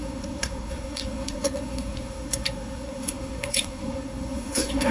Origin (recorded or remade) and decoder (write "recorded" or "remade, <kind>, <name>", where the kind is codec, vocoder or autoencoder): remade, codec, SNAC